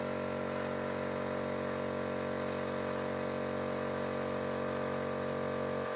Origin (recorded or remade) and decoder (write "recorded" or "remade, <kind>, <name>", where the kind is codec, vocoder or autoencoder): recorded